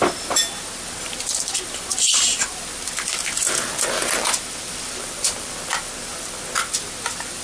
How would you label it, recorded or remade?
recorded